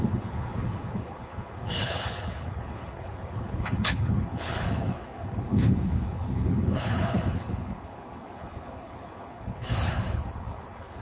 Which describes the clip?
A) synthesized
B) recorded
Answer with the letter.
A